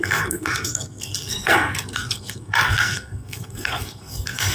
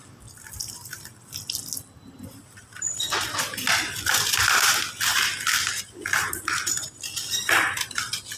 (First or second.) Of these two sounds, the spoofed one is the first